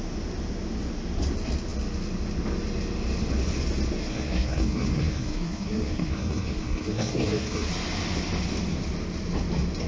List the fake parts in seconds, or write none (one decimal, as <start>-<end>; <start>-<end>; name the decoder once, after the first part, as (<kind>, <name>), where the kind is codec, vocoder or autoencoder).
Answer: 4.0-7.7 (codec, SNAC)

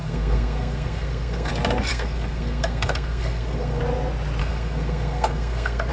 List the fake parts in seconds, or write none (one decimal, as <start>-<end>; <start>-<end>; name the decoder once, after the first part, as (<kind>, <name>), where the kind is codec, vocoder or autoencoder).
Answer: 0.0-1.5 (codec, SNAC); 1.9-3.8; 4.4-5.9